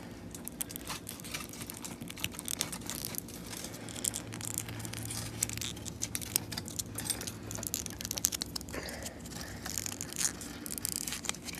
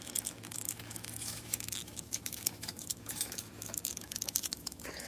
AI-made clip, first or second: second